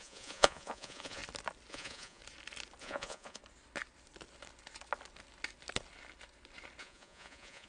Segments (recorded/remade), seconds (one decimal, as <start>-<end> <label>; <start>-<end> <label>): 0.0-1.2 remade; 1.2-1.7 recorded; 1.7-2.2 remade; 2.2-2.8 recorded; 2.8-3.4 remade; 3.4-6.8 recorded; 6.8-7.7 remade